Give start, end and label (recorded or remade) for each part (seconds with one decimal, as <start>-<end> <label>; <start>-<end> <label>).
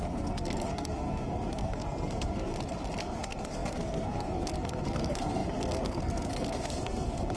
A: 0.0-2.5 remade; 2.5-3.0 recorded; 3.0-7.4 remade